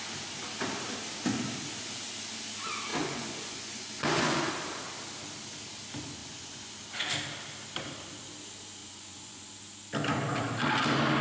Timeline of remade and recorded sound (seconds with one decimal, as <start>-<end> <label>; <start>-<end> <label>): 0.0-2.9 recorded; 2.9-4.5 remade; 4.5-6.2 recorded; 6.2-6.7 remade; 6.7-8.8 recorded; 8.8-9.5 remade; 9.5-11.2 recorded